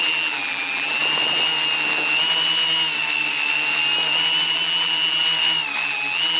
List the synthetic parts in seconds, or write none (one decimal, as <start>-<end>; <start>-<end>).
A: 0.0-1.0; 4.5-5.2; 5.8-6.4